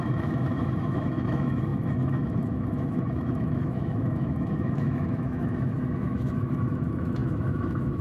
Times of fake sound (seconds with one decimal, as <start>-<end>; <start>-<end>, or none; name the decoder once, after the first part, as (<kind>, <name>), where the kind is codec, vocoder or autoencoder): 0.0-8.0 (autoencoder, DAC-VAE)